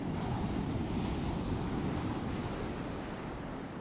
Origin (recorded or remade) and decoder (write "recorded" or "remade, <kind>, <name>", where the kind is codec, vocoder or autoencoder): recorded